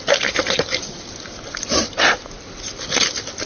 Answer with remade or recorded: recorded